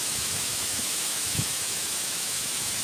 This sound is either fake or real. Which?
fake